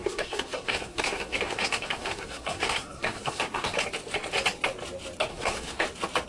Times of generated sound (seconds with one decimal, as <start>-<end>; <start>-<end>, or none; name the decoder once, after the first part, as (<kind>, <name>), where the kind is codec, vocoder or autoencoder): 0.0-3.8 (codec, SNAC); 5.3-5.8